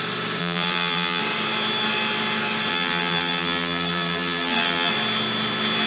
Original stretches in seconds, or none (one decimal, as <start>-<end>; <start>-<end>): 0.0-0.4; 1.2-2.7; 4.9-5.9